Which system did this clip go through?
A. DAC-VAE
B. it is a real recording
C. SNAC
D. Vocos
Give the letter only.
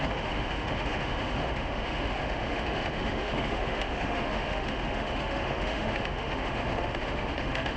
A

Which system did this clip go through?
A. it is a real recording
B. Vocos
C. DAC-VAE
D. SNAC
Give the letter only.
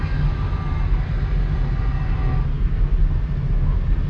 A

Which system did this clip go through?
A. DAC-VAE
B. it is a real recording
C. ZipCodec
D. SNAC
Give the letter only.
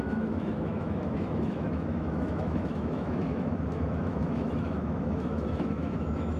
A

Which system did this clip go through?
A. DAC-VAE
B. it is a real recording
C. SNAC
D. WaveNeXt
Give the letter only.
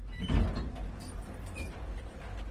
B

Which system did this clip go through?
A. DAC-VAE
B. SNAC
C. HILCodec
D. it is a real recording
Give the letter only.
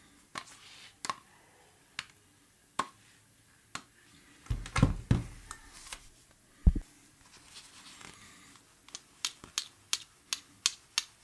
D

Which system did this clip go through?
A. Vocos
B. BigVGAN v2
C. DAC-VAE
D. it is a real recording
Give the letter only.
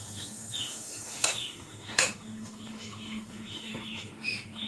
C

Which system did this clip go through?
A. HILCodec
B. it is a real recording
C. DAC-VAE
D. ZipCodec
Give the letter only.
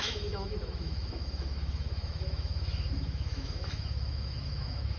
C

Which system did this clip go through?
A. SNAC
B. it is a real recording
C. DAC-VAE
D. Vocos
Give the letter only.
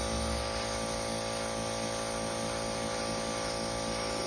B